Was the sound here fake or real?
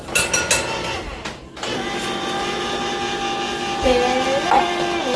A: real